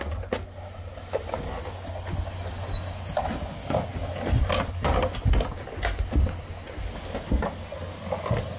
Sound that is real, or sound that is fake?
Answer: real